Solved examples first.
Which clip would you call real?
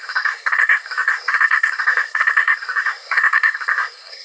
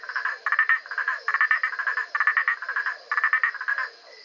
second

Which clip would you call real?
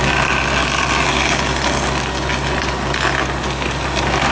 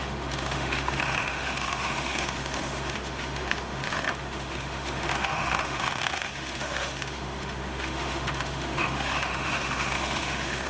first